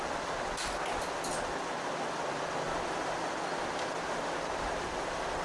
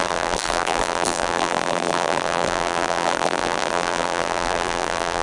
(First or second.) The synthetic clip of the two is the second